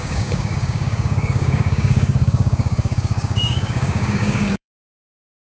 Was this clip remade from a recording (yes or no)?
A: yes